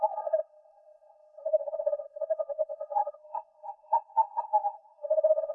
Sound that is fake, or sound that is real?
fake